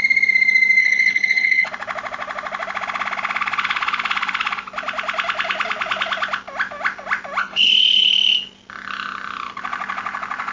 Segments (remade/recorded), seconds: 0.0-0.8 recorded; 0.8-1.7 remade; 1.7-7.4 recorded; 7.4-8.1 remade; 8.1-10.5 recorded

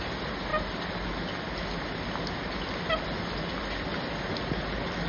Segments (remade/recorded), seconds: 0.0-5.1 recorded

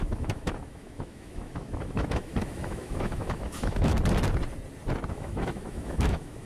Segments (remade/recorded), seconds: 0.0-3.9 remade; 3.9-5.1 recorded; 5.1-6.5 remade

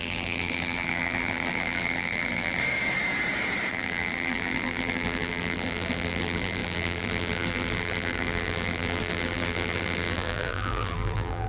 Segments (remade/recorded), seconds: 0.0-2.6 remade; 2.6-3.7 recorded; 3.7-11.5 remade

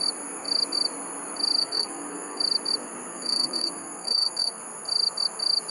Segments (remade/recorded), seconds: 0.0-1.6 recorded; 1.6-2.4 remade; 2.4-3.1 recorded; 3.1-4.6 remade; 4.6-5.7 recorded

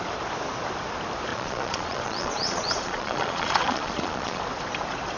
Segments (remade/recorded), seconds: 0.0-1.3 recorded; 1.3-4.4 remade; 4.4-5.2 recorded

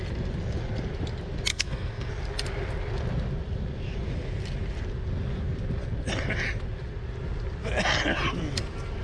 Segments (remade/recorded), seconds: 0.0-1.5 recorded; 1.5-2.1 remade; 2.1-9.0 recorded

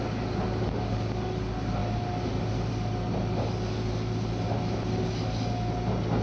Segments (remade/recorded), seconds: 0.0-6.2 recorded